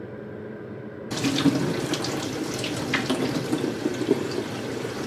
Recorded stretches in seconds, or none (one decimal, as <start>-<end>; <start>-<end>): none